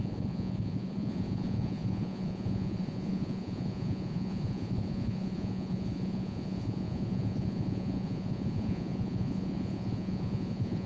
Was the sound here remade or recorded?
remade